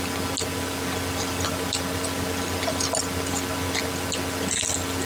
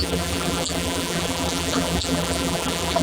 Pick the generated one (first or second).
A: second